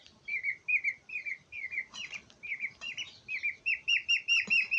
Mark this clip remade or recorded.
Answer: remade